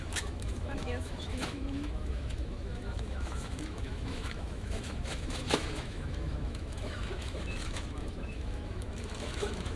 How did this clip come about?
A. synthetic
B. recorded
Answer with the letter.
A